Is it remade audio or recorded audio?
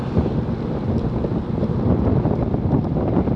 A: recorded